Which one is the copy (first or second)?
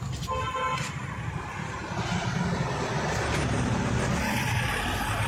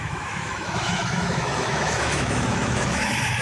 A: second